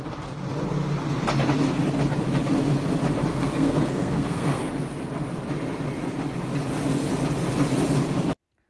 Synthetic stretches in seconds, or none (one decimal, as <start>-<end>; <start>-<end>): 3.3-4.7